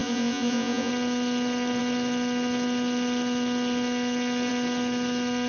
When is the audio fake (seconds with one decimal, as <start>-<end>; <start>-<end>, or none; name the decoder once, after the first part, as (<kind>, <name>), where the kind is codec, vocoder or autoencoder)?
0.0-0.9 (vocoder, Vocos)

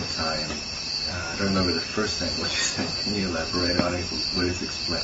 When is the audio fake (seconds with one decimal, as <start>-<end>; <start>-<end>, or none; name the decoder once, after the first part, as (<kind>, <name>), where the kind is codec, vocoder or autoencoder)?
none

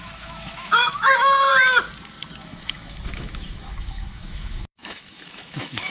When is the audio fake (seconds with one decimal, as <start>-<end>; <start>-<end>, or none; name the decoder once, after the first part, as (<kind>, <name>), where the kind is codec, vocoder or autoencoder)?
0.0-1.5 (autoencoder, DAC-VAE); 2.4-5.9

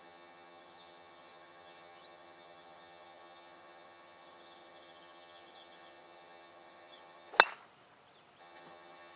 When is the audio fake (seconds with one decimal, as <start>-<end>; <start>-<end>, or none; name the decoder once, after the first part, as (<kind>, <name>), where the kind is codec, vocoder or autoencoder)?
0.0-7.3 (vocoder, HiFi-GAN); 8.4-9.2

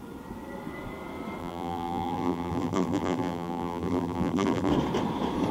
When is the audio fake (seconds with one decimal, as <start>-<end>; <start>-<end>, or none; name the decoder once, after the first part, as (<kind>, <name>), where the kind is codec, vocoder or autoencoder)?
1.4-4.7 (vocoder, BigVGAN v2)

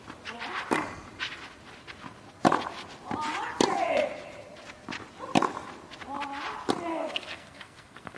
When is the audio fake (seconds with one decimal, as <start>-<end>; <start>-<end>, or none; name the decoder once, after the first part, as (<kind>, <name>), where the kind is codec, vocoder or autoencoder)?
6.9-8.2 (codec, SNAC)